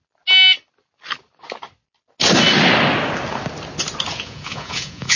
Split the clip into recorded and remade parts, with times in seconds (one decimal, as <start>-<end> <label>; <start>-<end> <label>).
0.0-4.1 recorded; 4.1-5.2 remade